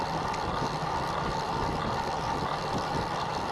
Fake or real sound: real